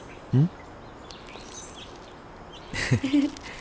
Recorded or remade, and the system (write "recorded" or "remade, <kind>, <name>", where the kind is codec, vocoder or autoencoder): recorded